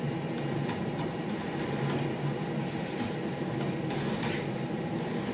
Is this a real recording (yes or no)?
no